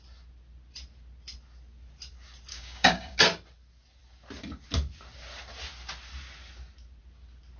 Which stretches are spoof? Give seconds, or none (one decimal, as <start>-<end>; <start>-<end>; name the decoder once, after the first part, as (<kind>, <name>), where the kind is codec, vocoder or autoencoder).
2.5-3.2 (codec, DAC)